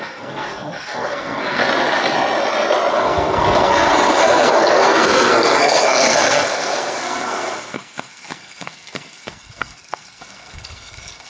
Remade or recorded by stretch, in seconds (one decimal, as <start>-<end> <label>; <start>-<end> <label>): 0.0-1.6 remade; 1.6-2.9 recorded; 2.9-11.3 remade